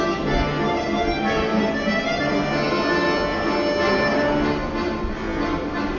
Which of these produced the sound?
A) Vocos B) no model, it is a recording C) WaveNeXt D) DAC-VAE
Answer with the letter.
B